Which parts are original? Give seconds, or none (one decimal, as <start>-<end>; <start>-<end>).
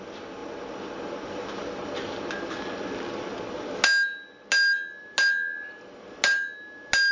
0.0-7.1